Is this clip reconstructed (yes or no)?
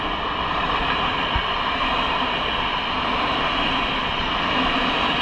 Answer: no